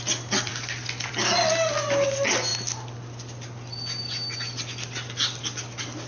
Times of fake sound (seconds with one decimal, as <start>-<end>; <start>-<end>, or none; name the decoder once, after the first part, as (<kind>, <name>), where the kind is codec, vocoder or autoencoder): none